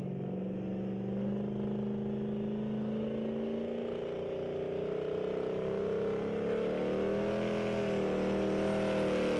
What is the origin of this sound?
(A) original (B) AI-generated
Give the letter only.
A